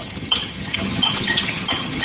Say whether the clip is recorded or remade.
remade